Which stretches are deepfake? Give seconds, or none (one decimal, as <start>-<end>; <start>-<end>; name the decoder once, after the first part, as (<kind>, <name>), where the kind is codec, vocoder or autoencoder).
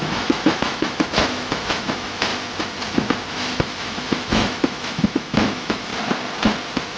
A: 0.0-2.3 (autoencoder, DAC-VAE); 3.3-5.9